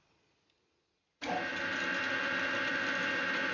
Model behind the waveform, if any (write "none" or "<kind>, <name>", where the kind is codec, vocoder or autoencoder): none